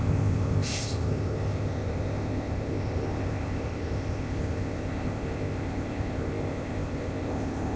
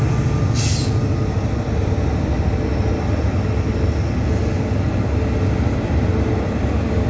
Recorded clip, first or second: second